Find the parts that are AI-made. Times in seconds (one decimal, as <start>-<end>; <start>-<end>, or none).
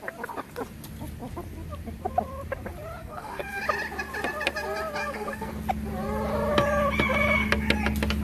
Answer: 3.0-3.6; 5.0-5.5